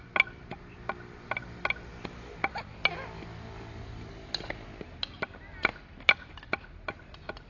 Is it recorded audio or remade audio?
recorded